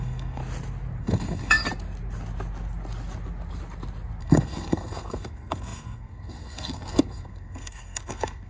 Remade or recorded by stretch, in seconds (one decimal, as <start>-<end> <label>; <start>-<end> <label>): 0.0-0.4 remade; 0.4-1.0 recorded; 1.0-1.6 remade; 1.6-4.2 recorded; 4.2-8.5 remade